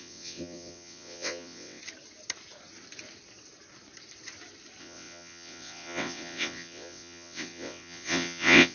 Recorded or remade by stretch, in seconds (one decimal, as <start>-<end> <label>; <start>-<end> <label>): 0.0-1.8 remade; 1.8-4.8 recorded; 4.8-8.7 remade